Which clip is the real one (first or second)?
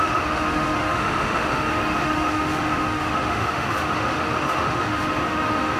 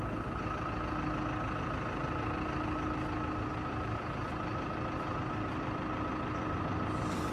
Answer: second